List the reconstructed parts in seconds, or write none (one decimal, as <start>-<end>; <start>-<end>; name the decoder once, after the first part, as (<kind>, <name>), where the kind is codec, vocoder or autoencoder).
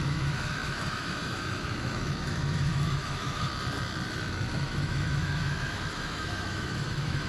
0.0-3.5 (autoencoder, DAC-VAE); 4.5-7.3